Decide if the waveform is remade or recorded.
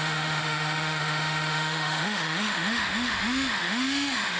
remade